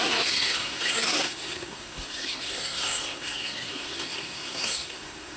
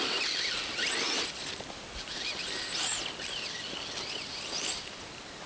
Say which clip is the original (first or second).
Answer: second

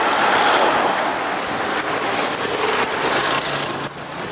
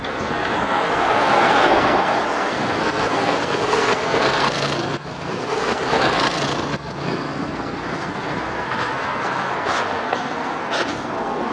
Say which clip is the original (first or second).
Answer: first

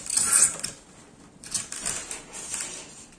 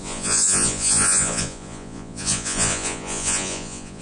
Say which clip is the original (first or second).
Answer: first